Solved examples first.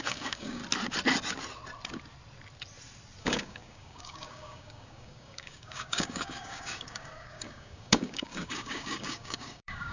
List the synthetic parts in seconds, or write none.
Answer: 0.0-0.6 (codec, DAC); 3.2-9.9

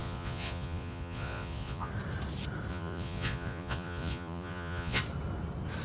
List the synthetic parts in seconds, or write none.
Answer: 0.0-1.9 (vocoder, Vocos); 2.7-5.0